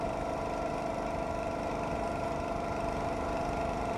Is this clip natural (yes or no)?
no